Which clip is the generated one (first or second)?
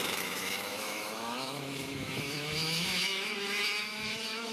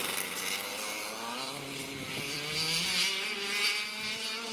first